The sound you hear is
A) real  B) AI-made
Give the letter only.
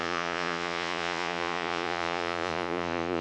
B